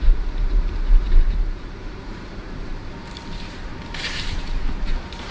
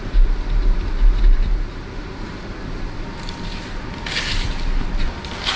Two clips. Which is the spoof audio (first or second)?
first